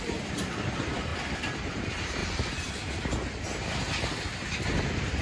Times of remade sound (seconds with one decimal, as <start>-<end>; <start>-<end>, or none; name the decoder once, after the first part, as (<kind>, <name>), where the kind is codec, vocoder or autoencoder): 0.0-1.1 (vocoder, BigVGAN v2); 1.7-2.2; 4.8-5.2